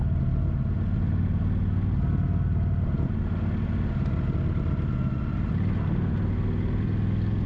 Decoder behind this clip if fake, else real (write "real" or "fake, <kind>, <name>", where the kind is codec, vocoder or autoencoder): real